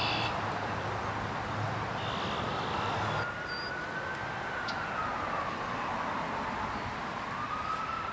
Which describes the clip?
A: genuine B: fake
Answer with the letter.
A